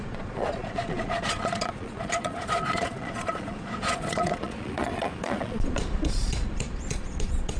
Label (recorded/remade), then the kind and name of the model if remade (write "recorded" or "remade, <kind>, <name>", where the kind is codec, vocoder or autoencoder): remade, vocoder, Vocos